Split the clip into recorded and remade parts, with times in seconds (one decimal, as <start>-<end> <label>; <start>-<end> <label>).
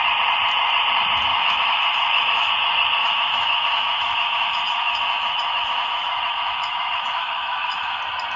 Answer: 0.0-1.3 recorded; 1.3-2.5 remade; 2.5-3.0 recorded; 3.0-8.0 remade; 8.0-8.4 recorded